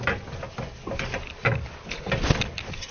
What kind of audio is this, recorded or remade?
recorded